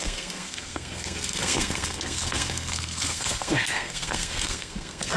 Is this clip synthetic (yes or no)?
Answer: yes